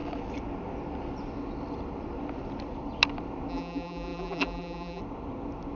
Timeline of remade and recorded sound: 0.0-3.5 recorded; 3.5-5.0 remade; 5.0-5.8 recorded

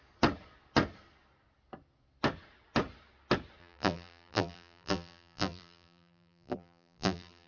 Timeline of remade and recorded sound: 0.0-3.6 recorded; 3.6-7.5 remade

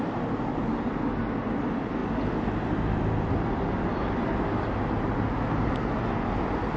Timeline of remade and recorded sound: 0.0-6.8 recorded

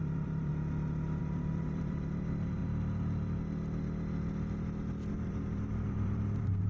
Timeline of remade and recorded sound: 0.0-0.5 remade; 0.5-1.2 recorded; 1.2-2.6 remade; 2.6-5.1 recorded; 5.1-6.7 remade

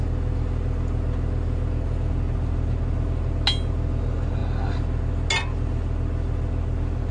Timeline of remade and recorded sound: 0.0-7.1 recorded